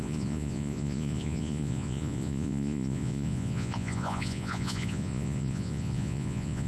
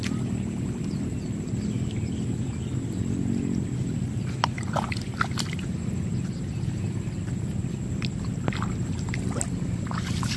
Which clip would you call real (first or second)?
second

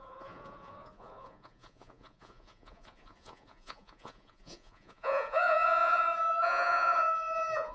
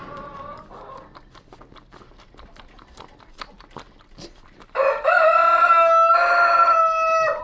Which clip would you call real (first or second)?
second